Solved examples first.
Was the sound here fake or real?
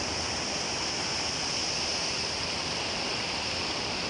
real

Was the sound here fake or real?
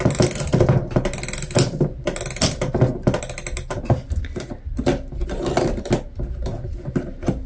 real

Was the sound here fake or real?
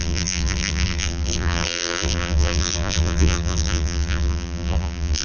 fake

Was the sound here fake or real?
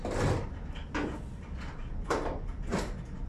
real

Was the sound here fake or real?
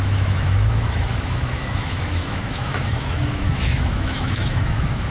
fake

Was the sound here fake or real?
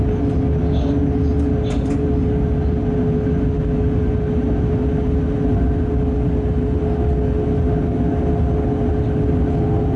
real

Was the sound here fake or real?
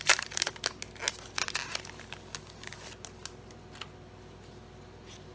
real